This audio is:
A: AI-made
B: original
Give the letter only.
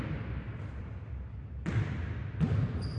A